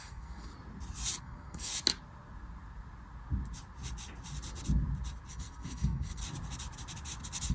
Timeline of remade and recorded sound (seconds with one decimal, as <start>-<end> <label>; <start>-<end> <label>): 0.0-0.5 remade; 0.5-1.2 recorded; 1.2-1.7 remade; 1.7-5.3 recorded; 5.3-6.2 remade; 6.2-7.5 recorded